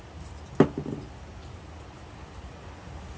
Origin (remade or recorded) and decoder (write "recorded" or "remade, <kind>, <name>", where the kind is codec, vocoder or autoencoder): recorded